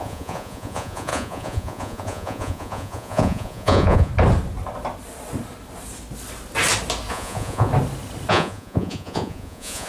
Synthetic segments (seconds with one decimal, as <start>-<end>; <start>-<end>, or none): 0.0-4.1; 7.1-7.7; 8.3-9.9